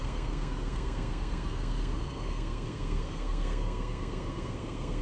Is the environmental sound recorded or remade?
remade